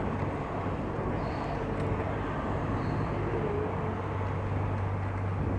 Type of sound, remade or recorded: recorded